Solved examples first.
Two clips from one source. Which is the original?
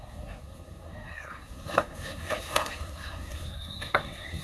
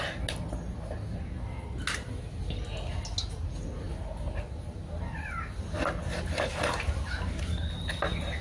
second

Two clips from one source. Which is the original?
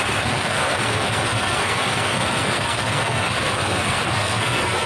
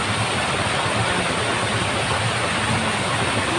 second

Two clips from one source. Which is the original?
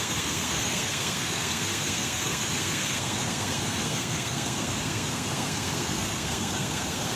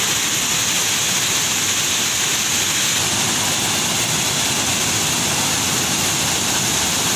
second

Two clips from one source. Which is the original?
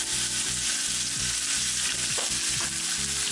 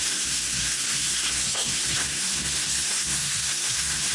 first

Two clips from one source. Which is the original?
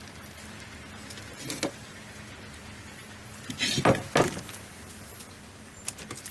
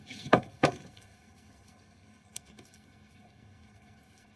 first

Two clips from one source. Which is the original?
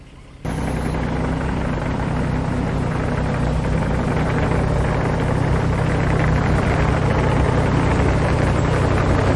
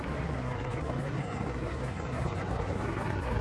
first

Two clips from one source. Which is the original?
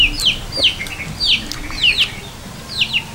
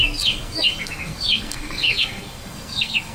first